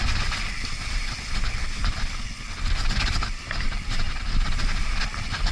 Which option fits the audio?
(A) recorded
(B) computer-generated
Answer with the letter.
A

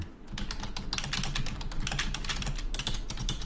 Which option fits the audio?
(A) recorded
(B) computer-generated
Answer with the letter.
A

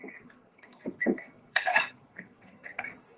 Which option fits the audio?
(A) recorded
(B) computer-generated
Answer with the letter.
B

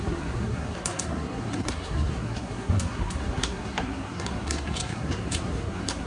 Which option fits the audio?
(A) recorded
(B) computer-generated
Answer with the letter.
B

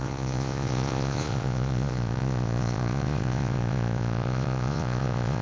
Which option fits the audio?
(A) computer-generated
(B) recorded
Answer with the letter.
A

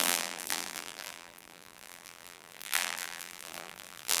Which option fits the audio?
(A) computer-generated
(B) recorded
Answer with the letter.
A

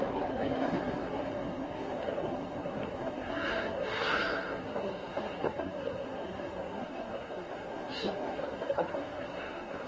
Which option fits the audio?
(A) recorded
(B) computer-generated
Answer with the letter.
B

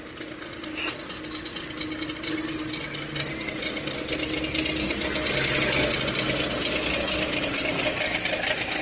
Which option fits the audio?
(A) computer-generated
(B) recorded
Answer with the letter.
B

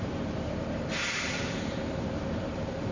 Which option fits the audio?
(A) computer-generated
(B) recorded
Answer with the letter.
A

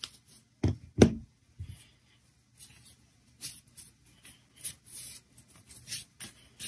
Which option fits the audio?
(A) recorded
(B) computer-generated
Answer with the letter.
A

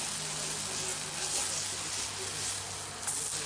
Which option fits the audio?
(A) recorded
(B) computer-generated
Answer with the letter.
A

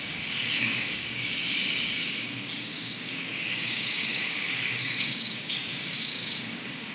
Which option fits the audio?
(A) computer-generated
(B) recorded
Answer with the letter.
A